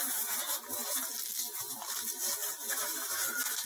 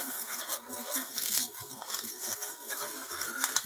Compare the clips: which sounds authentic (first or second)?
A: first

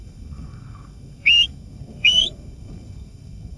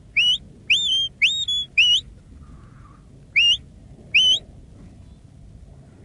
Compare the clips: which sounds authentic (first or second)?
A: second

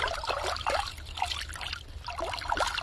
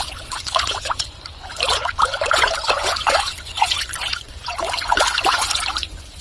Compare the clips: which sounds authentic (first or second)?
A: first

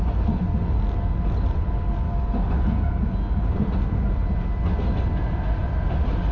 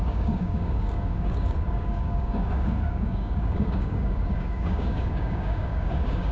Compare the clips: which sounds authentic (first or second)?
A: first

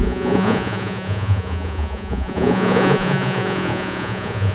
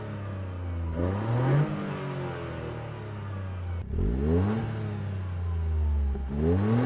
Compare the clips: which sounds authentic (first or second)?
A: second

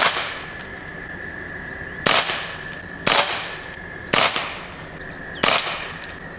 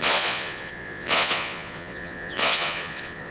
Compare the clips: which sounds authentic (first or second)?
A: first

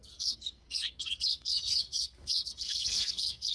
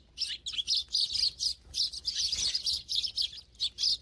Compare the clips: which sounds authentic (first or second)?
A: second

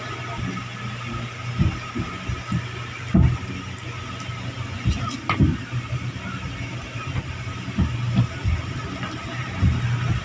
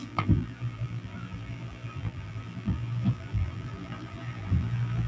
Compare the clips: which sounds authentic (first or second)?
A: first